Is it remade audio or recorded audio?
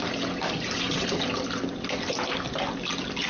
recorded